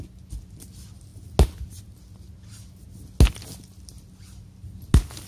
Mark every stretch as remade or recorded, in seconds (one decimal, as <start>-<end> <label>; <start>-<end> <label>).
0.0-5.3 recorded